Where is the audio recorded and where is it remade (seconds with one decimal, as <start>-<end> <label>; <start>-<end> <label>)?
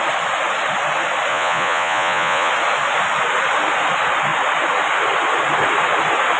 0.0-1.3 recorded; 1.3-2.5 remade; 2.5-6.4 recorded